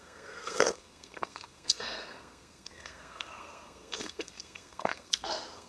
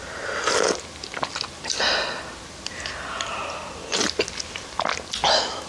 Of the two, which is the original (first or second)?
second